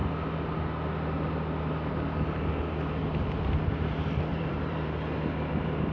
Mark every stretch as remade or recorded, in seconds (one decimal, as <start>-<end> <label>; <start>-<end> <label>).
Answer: 0.0-4.3 recorded; 4.3-4.9 remade; 4.9-5.9 recorded

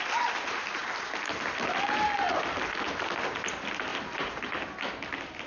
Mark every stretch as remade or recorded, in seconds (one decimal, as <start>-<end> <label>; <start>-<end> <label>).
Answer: 0.0-3.9 recorded; 3.9-4.8 remade; 4.8-5.5 recorded

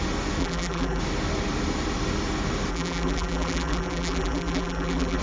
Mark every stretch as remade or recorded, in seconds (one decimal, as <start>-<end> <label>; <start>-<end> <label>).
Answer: 0.0-0.4 recorded; 0.4-1.0 remade; 1.0-2.7 recorded; 2.7-5.2 remade